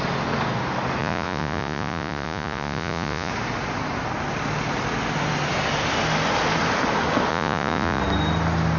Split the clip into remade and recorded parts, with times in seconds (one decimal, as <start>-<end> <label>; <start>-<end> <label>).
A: 0.0-1.0 recorded; 1.0-3.3 remade; 3.3-7.3 recorded; 7.3-8.0 remade; 8.0-8.8 recorded